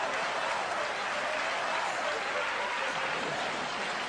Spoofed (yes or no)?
no